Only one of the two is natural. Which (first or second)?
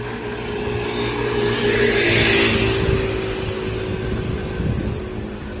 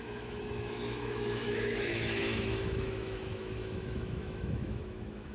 first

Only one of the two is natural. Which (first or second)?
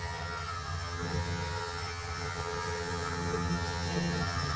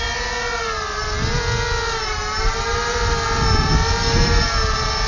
second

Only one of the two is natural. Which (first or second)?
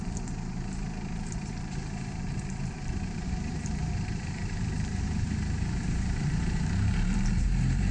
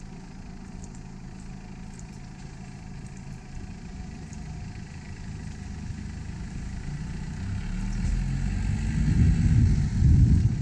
second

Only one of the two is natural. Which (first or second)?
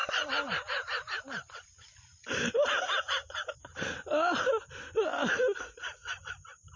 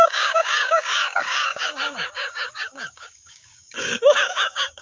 first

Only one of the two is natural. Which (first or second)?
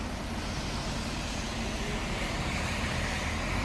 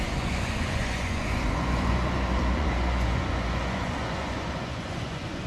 first